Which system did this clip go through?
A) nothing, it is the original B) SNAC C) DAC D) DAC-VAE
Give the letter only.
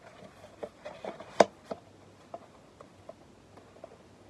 A